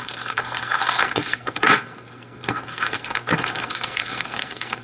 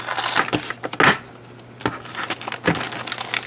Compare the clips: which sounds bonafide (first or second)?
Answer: second